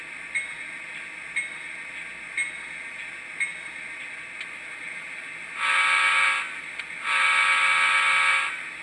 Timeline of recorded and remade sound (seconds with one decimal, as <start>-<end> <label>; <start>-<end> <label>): 0.0-8.8 recorded